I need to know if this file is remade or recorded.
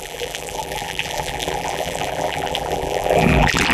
remade